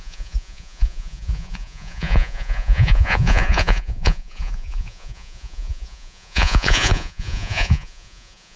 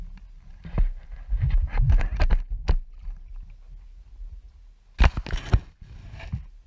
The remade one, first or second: first